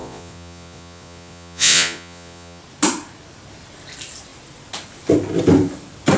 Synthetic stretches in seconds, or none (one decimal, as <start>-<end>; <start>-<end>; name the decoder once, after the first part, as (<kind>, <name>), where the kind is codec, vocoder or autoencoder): 0.0-2.6 (vocoder, Vocos)

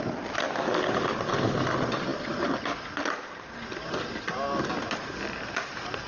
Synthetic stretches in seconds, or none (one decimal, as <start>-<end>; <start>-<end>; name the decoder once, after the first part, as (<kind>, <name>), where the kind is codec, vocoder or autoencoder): none